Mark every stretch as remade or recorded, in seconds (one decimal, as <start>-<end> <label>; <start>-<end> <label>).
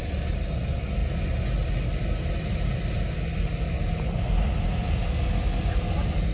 0.0-6.3 recorded